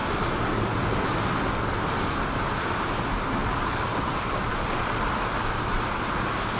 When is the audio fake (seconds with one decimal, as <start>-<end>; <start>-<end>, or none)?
3.4-4.5